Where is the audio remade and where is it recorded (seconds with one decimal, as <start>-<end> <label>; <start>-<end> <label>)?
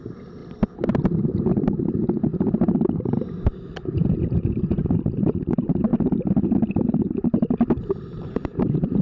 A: 0.0-0.4 remade; 0.4-1.5 recorded; 1.5-2.3 remade; 2.3-4.2 recorded; 4.2-5.9 remade; 5.9-6.7 recorded; 6.7-9.0 remade